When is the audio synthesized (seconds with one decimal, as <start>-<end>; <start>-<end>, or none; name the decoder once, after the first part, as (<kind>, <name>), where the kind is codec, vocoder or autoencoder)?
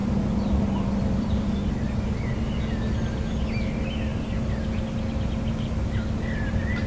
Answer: 0.0-1.7 (vocoder, BigVGAN v2)